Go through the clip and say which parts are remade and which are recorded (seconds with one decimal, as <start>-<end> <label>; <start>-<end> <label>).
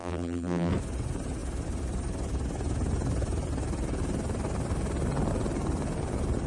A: 0.0-0.7 remade; 0.7-6.5 recorded